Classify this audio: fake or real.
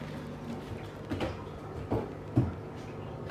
real